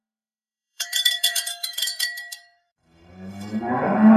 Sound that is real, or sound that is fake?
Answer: fake